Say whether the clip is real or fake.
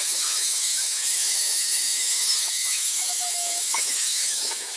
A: fake